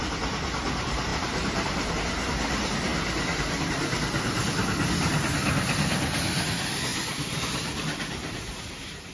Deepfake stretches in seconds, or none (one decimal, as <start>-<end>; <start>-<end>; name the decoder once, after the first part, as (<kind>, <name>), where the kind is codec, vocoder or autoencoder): 1.1-1.9 (vocoder, BigVGAN v2); 6.9-9.1